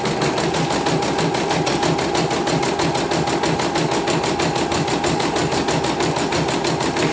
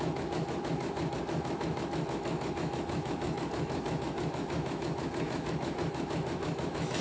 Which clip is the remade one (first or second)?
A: second